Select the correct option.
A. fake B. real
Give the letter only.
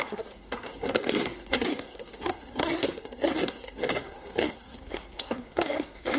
A